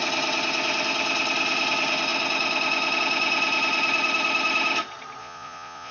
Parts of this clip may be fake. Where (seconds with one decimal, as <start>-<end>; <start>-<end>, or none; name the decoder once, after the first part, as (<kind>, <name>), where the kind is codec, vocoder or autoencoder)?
5.2-5.9 (vocoder, Vocos)